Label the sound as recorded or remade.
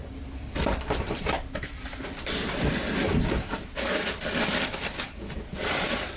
remade